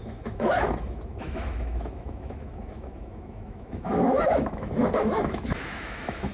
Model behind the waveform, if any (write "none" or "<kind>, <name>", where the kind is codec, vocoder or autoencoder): autoencoder, DAC-VAE